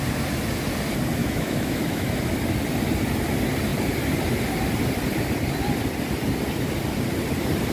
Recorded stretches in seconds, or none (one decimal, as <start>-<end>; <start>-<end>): 0.0-1.2; 2.2-7.7